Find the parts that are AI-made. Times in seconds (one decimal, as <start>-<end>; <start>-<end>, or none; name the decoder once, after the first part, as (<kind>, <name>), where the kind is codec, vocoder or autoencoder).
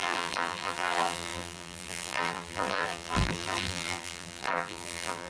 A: 0.0-5.3 (vocoder, BigVGAN v2)